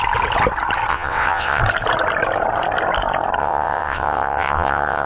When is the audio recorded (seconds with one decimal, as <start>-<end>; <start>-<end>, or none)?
0.0-0.9; 1.6-3.4